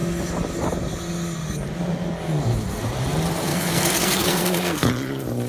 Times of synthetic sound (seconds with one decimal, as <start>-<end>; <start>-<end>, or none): 3.5-4.9